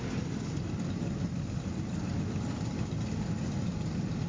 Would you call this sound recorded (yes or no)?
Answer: yes